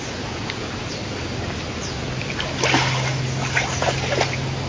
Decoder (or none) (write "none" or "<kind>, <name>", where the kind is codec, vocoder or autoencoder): none